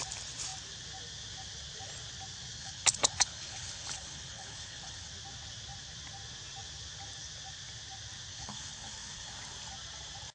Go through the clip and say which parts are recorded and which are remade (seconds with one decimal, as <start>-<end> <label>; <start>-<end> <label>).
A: 0.0-2.6 recorded; 2.6-5.1 remade; 5.1-8.3 recorded; 8.3-9.3 remade; 9.3-10.3 recorded